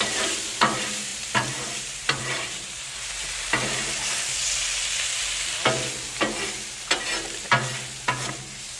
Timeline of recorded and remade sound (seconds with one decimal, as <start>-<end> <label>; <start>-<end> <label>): 0.0-4.8 remade; 4.8-8.3 recorded; 8.3-8.8 remade